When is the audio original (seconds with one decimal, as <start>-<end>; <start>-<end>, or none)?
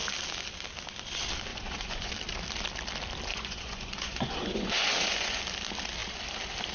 0.0-1.5; 2.1-3.3; 5.4-6.7